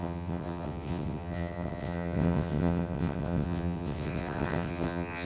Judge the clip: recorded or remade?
remade